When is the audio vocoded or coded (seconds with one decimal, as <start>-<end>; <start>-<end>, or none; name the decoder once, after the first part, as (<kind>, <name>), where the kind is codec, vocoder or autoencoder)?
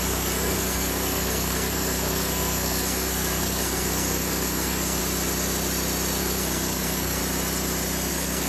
0.0-5.0 (codec, SNAC); 6.2-7.2; 8.1-8.5